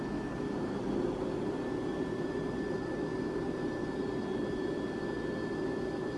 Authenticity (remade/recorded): recorded